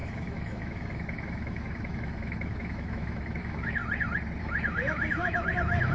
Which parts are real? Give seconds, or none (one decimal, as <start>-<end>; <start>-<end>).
3.8-4.4